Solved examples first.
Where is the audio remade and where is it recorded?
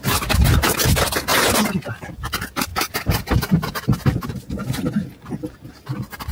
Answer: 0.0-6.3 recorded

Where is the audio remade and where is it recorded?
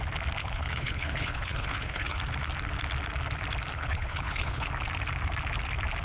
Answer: 0.0-0.4 recorded; 0.4-2.2 remade; 2.2-3.7 recorded; 3.7-4.7 remade; 4.7-6.0 recorded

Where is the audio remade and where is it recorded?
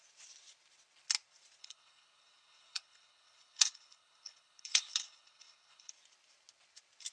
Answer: 0.0-1.6 recorded; 1.6-5.9 remade; 5.9-7.1 recorded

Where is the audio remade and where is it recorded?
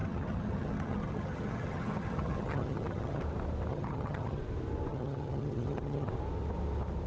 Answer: 0.0-3.2 remade; 3.2-3.7 recorded; 3.7-4.4 remade; 4.4-4.9 recorded; 4.9-6.1 remade; 6.1-7.1 recorded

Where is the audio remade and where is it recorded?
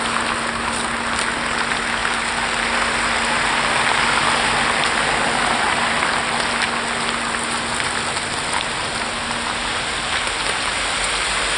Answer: 0.0-11.6 recorded